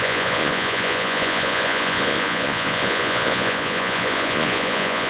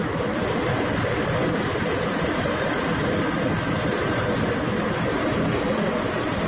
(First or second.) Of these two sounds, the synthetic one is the first